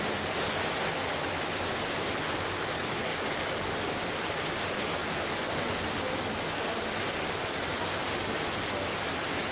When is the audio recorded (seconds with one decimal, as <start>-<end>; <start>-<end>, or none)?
0.0-3.1; 4.3-5.0; 6.4-9.5